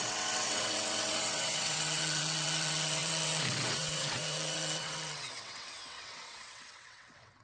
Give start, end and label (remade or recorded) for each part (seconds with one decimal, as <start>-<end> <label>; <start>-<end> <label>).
0.0-7.4 remade